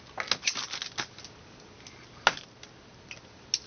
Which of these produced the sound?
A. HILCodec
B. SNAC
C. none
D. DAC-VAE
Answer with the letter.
C